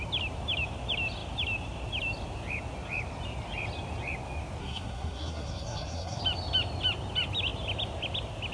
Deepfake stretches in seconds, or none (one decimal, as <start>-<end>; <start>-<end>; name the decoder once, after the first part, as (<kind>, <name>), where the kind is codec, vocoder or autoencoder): 4.6-6.2 (codec, SNAC)